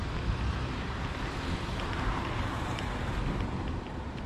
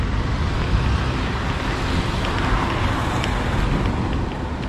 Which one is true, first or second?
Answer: second